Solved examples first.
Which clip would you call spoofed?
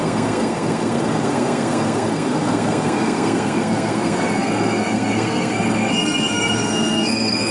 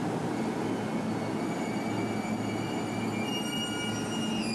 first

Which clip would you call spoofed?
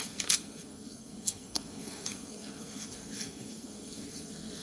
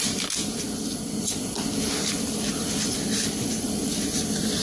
first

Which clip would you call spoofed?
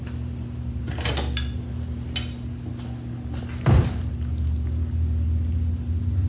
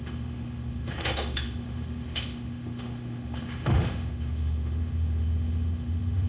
second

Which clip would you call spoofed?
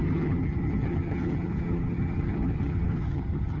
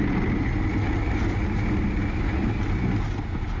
first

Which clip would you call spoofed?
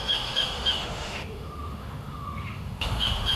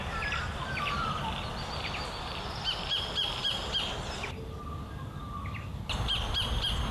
first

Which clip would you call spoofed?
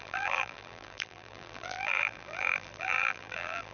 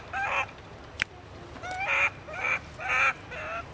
first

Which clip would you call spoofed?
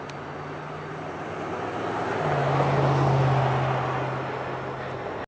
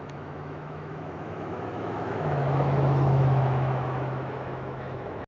second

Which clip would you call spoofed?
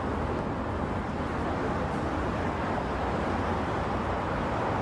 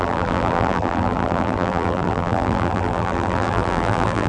second